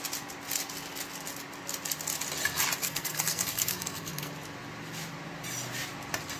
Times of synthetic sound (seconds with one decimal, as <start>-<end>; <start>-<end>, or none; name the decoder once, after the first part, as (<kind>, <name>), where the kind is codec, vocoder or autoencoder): 2.8-4.3 (codec, SNAC)